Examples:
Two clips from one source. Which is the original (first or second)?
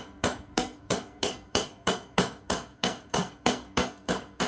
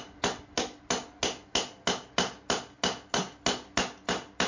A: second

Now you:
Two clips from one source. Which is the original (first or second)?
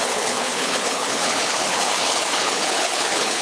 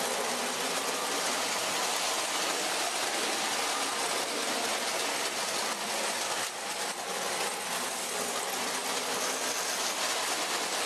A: second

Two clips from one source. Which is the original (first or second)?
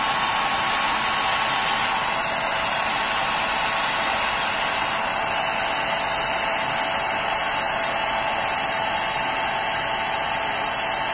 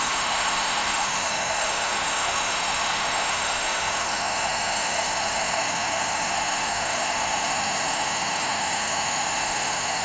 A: first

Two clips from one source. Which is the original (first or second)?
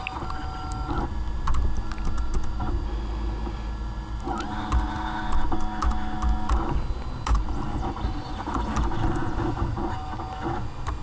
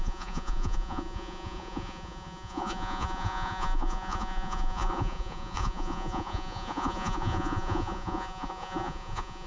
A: first